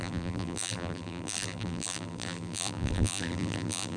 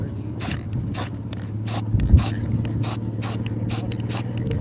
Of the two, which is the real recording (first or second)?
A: second